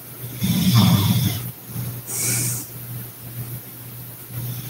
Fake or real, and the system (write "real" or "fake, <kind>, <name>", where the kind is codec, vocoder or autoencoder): real